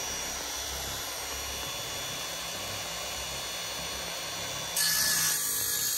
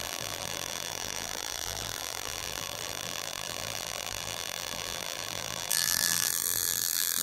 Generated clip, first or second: second